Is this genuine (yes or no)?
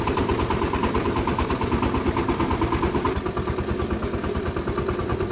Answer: yes